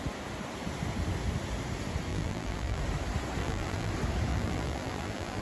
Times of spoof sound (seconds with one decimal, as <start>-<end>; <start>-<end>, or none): 2.1-2.8; 3.4-3.9; 4.3-5.4